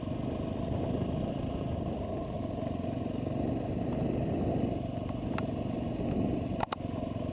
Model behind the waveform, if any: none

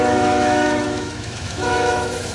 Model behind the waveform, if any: autoencoder, DAC-VAE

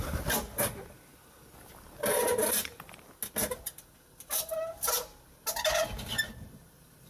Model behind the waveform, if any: none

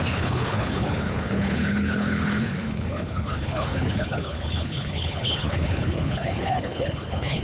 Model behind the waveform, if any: codec, HILCodec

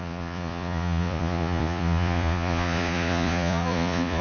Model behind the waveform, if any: vocoder, Vocos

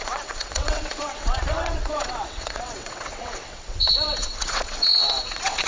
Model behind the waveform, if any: vocoder, WaveNeXt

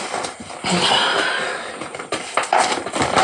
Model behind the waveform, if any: none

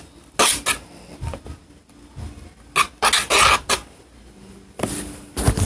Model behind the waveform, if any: none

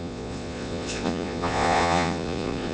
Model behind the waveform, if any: vocoder, Vocos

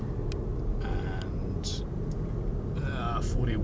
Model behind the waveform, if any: none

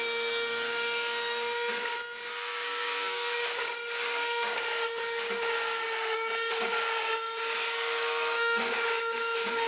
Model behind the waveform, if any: codec, DAC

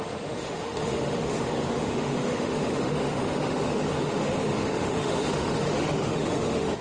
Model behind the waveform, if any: autoencoder, DAC-VAE